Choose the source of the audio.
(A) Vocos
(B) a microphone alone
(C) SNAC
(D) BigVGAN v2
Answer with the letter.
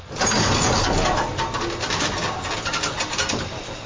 B